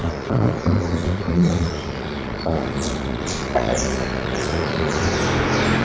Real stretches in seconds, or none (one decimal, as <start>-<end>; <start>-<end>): 5.0-5.8